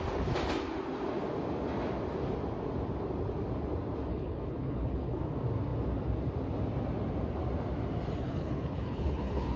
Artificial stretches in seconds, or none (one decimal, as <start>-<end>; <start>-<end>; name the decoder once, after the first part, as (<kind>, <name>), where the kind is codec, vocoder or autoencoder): 4.1-5.2 (codec, HILCodec); 8.2-9.6